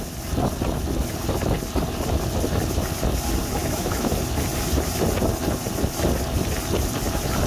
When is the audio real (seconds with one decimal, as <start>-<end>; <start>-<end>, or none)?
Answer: 0.0-3.6; 4.1-7.5